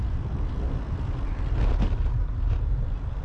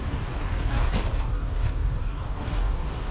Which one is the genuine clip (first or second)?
first